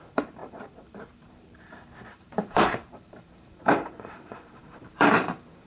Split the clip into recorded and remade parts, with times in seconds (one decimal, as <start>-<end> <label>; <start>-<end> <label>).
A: 0.0-5.7 remade